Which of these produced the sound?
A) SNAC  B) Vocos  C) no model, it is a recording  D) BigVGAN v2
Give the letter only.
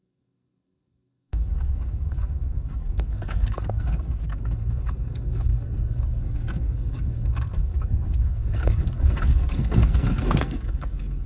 A